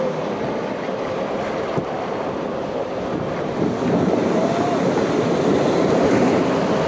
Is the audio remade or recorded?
recorded